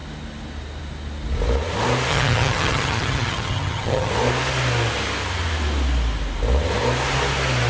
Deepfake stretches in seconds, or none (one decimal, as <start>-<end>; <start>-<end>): 2.1-4.1